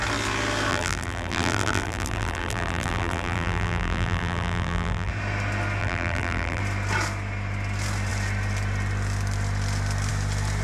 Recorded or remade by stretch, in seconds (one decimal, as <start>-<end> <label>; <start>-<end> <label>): 0.0-0.7 recorded; 0.7-5.1 remade; 5.1-5.8 recorded; 5.8-6.6 remade; 6.6-10.6 recorded